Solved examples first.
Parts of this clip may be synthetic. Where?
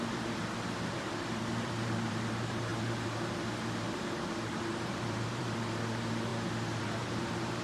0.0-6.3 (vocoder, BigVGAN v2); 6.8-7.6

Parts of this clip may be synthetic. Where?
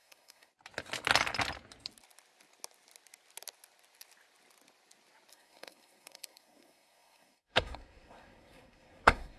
0.0-0.5 (codec, SNAC); 5.3-9.4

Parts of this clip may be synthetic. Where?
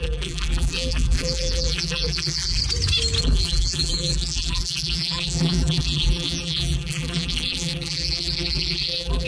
0.0-2.6 (vocoder, BigVGAN v2); 3.2-9.3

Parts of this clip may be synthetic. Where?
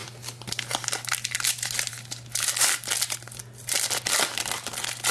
none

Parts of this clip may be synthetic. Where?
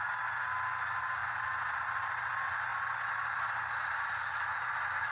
none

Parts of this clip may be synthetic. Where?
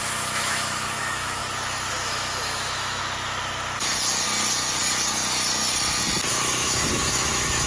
0.0-1.4 (autoencoder, DAC-VAE); 1.9-3.0; 6.3-7.7